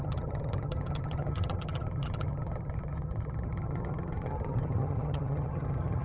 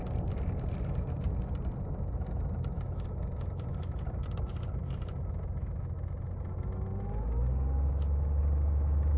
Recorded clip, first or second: second